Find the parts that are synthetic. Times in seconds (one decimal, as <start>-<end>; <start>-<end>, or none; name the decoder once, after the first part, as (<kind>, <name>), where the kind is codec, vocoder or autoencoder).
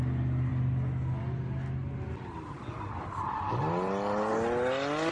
none